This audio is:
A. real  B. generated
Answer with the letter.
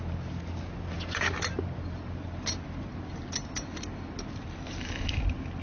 A